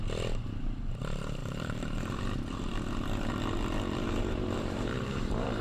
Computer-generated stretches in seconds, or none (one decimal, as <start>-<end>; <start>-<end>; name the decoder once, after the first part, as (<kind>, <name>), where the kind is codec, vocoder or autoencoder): 1.4-2.2 (vocoder, BigVGAN v2); 4.0-5.6